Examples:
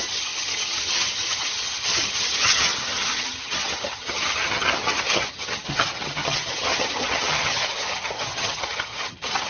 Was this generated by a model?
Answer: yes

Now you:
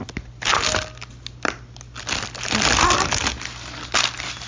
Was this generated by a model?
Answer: no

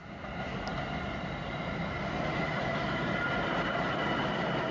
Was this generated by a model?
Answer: no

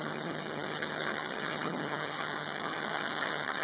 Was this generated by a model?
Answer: yes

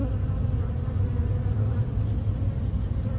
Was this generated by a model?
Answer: no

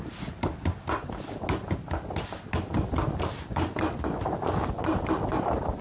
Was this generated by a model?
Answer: no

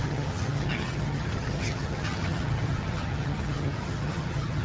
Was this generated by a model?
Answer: yes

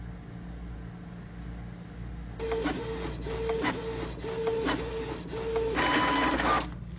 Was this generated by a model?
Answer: no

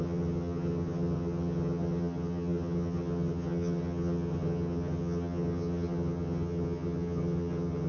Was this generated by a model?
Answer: yes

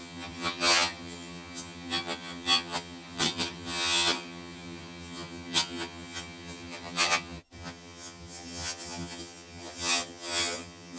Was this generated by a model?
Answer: yes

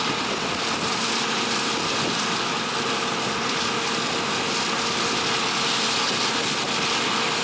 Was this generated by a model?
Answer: no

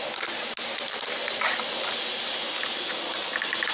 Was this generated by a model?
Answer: no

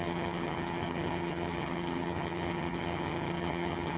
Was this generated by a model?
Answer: yes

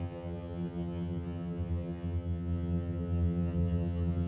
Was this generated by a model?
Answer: yes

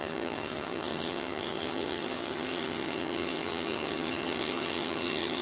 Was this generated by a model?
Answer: yes